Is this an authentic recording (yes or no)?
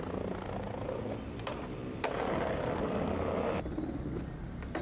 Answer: yes